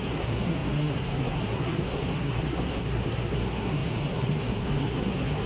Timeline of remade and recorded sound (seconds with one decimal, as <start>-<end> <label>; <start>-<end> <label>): 0.0-5.5 remade